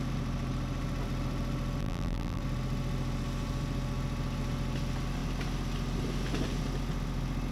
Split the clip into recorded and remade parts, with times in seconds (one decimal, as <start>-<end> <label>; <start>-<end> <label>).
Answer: 0.0-1.8 recorded; 1.8-2.4 remade; 2.4-7.5 recorded